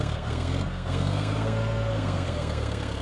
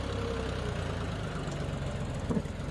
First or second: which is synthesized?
first